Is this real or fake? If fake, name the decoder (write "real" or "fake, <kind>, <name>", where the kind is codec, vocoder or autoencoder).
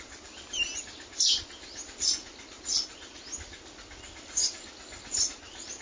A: real